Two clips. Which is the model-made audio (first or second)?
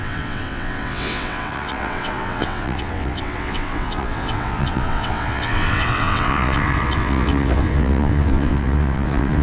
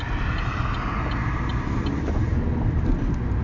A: first